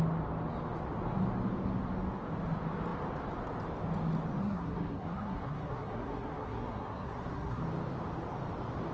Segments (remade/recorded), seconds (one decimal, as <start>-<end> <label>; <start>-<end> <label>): 0.0-4.4 recorded; 4.4-7.6 remade; 7.6-8.9 recorded